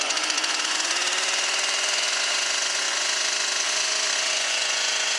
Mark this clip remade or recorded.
remade